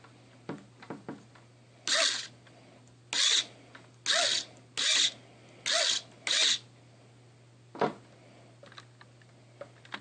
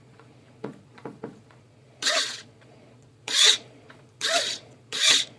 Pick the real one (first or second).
first